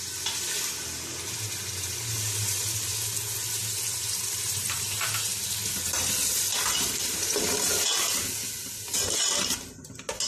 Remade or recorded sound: recorded